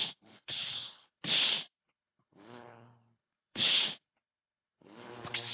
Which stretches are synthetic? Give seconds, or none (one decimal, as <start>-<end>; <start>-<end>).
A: 0.0-1.2; 1.8-5.1